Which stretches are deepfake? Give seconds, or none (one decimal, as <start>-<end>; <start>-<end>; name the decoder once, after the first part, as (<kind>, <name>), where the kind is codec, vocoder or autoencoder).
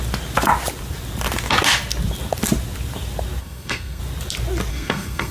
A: 3.4-4.0 (codec, SNAC); 4.7-5.3